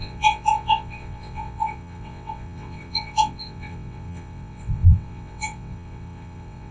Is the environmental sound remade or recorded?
remade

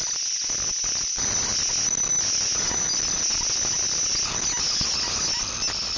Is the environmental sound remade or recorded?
recorded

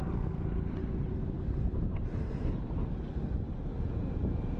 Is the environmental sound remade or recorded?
recorded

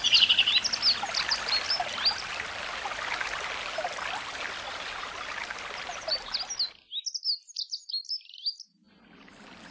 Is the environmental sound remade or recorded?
recorded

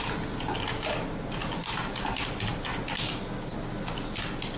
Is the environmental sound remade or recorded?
recorded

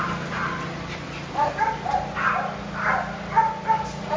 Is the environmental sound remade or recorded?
recorded